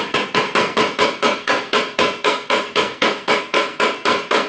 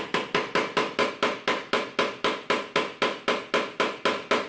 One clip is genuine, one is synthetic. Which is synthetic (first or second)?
first